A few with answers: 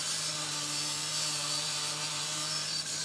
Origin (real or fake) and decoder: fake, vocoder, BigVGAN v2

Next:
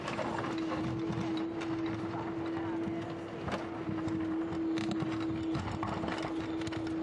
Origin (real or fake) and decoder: real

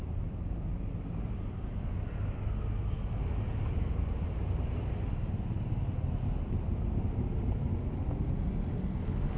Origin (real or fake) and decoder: real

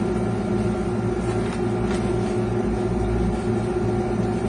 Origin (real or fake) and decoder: real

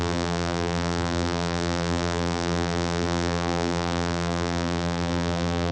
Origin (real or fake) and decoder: fake, vocoder, BigVGAN v2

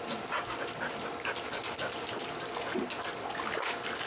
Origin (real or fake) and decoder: real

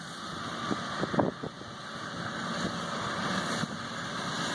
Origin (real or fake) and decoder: real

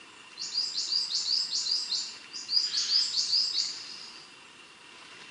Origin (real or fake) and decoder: fake, vocoder, BigVGAN v2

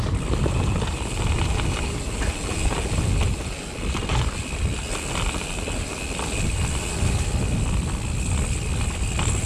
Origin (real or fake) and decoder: real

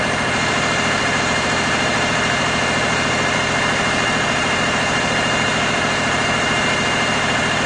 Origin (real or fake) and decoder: fake, vocoder, BigVGAN v2